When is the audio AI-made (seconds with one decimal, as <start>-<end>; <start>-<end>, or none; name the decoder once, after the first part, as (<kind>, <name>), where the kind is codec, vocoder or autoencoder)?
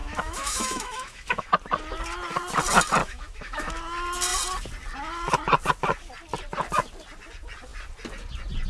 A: 0.0-1.5 (autoencoder, DAC-VAE); 3.0-3.7